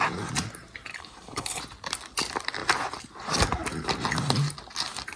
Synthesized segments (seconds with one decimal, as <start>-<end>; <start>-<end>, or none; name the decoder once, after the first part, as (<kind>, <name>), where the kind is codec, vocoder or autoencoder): 0.9-1.6 (codec, HILCodec)